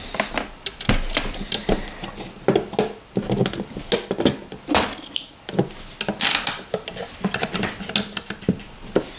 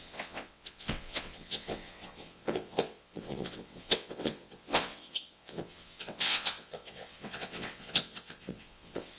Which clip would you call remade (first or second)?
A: second